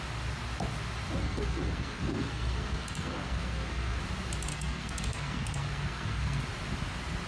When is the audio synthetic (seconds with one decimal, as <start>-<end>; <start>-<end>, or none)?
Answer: 1.2-4.0; 4.5-6.4